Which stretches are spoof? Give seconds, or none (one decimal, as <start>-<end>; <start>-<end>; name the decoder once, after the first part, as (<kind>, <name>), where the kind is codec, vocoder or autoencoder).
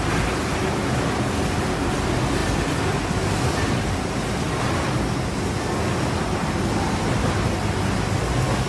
none